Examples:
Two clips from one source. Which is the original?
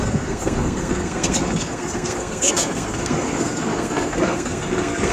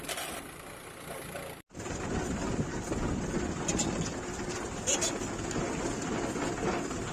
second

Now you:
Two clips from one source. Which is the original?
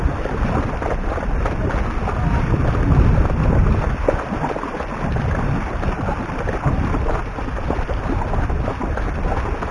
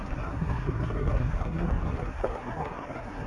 first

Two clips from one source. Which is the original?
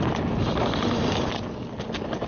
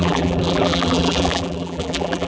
first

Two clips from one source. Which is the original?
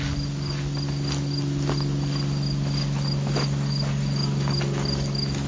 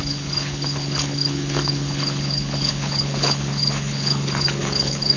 first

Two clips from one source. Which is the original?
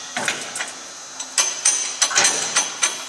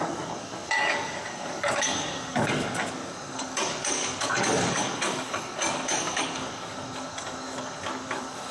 first